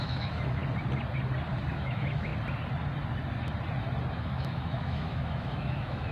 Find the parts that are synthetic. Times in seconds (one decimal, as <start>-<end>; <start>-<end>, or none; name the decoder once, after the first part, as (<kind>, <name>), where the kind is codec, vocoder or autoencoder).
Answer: 0.0-0.6 (autoencoder, DAC-VAE); 1.7-2.3; 4.2-6.1